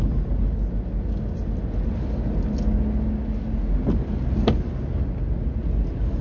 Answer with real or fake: real